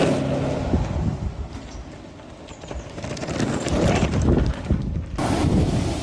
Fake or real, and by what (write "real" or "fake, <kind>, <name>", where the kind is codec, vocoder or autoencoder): real